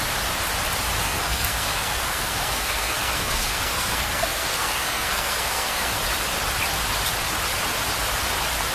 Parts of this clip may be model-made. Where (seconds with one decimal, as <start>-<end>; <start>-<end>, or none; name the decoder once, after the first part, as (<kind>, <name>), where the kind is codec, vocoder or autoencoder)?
1.0-6.0 (codec, SNAC)